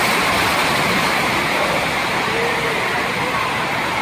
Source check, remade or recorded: remade